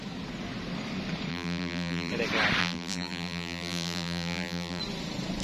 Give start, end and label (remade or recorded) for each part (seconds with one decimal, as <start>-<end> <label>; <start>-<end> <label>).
0.0-1.3 recorded; 1.3-2.1 remade; 2.1-2.6 recorded; 2.6-4.8 remade; 4.8-5.4 recorded